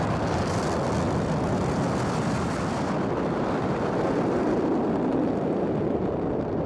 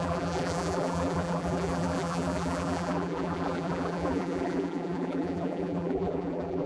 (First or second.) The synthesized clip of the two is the second